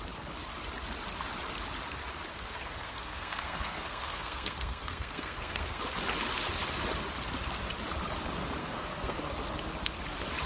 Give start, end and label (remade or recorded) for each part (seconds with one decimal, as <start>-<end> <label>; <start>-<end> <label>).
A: 0.0-2.3 recorded; 2.3-5.8 remade; 5.8-8.6 recorded; 8.6-9.2 remade; 9.2-10.5 recorded